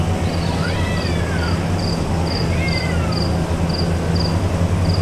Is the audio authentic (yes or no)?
yes